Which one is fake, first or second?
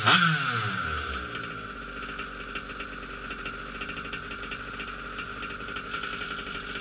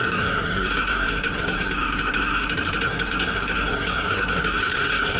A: second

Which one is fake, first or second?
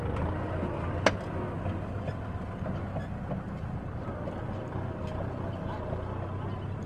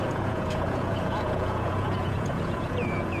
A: second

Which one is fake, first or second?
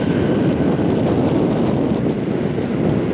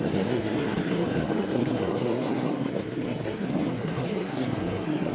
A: second